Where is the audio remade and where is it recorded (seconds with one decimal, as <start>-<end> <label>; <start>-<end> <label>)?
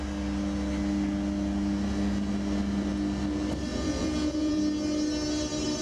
0.0-3.7 recorded; 3.7-4.6 remade; 4.6-5.8 recorded